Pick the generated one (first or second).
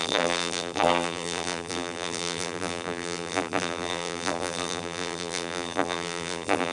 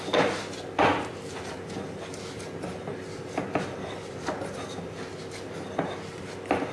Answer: first